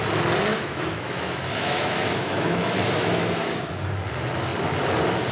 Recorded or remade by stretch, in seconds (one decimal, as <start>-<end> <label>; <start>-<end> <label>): 0.0-0.5 recorded; 0.5-3.7 remade; 3.7-5.3 recorded

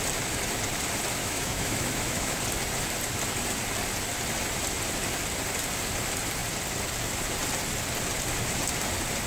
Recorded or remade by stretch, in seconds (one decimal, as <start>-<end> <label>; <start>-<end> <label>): 0.0-1.2 recorded; 1.2-2.4 remade; 2.4-9.3 recorded

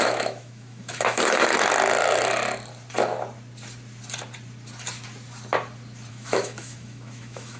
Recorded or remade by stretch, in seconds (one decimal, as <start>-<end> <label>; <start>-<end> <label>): 0.0-1.5 remade; 1.5-6.1 recorded; 6.1-7.6 remade

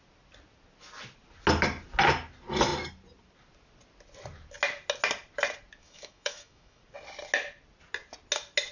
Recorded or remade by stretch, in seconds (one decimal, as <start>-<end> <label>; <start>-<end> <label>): 0.0-5.8 recorded; 5.8-6.8 remade; 6.8-8.7 recorded

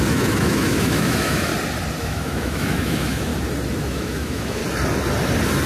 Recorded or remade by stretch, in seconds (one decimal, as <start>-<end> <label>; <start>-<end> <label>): 0.0-1.5 remade; 1.5-2.0 recorded; 2.0-3.3 remade; 3.3-3.8 recorded; 3.8-4.6 remade; 4.6-5.7 recorded

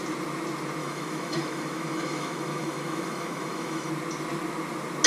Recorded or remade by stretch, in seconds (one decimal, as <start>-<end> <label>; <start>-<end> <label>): 0.0-0.8 recorded; 0.8-3.9 remade; 3.9-5.1 recorded